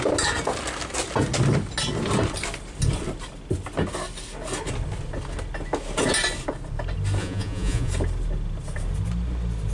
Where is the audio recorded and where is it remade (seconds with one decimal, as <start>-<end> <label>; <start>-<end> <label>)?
0.0-7.2 recorded; 7.2-7.9 remade; 7.9-9.7 recorded